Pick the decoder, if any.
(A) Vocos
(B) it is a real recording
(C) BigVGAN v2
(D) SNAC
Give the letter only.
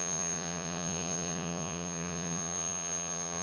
A